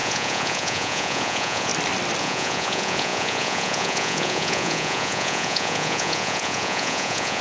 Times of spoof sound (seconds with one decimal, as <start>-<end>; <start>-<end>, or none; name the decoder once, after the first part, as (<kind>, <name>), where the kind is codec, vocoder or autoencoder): 0.0-1.7 (vocoder, Vocos); 2.2-7.4